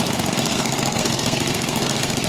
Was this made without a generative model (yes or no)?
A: no